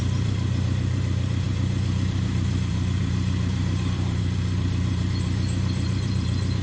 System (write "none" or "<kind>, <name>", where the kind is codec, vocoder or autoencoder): vocoder, BigVGAN v2